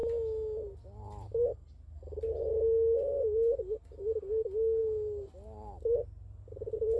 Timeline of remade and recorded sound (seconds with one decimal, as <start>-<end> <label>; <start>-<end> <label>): 0.0-7.0 recorded